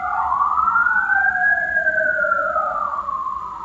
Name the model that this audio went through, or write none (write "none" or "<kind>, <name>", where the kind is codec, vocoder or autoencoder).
none